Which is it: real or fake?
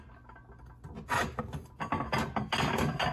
real